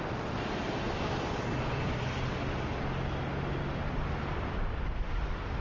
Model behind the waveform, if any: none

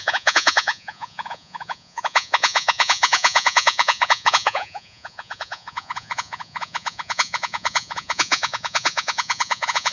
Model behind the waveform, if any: vocoder, Vocos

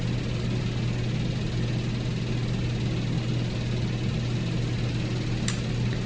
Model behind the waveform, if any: none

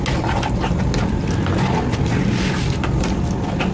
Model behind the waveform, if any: none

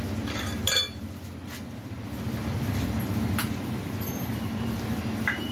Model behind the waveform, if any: vocoder, BigVGAN v2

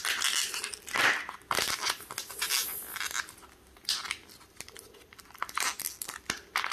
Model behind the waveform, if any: none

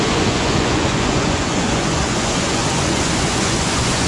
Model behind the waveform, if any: vocoder, Vocos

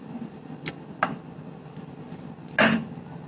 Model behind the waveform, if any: none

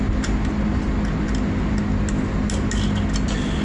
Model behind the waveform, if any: none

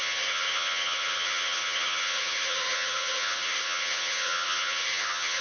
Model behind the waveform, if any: vocoder, HiFi-GAN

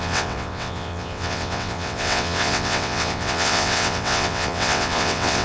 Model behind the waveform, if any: vocoder, WaveNeXt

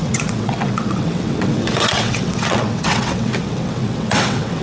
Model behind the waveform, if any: vocoder, WaveNeXt